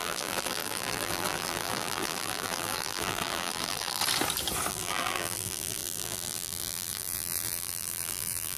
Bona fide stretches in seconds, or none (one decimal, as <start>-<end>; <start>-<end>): 4.0-4.7